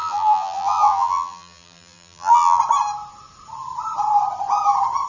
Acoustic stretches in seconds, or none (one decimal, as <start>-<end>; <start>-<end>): 2.6-5.1